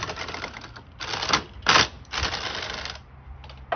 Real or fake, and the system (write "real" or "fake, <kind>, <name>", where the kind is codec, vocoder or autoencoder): real